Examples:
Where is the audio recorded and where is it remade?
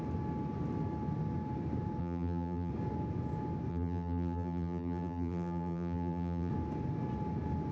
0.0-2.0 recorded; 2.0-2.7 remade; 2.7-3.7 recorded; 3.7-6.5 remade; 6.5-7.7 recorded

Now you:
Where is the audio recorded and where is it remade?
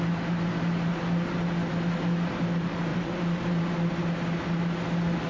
0.0-2.9 recorded; 2.9-3.9 remade; 3.9-5.3 recorded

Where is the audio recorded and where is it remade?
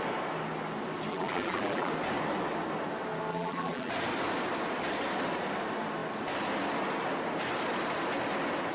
0.0-1.1 recorded; 1.1-1.9 remade; 1.9-3.3 recorded; 3.3-3.9 remade; 3.9-8.7 recorded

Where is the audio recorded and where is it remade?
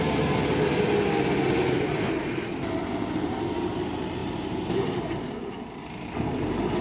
0.0-4.2 recorded; 4.2-5.0 remade; 5.0-6.8 recorded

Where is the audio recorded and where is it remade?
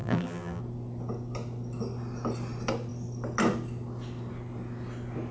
0.0-0.6 remade; 0.6-5.3 recorded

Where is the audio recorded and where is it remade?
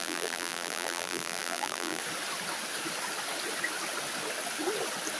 0.0-2.0 remade; 2.0-5.2 recorded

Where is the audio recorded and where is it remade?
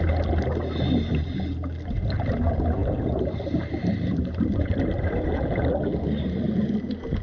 0.0-2.8 recorded; 2.8-6.2 remade; 6.2-7.2 recorded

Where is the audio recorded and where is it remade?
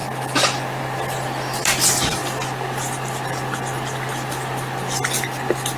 0.0-5.8 recorded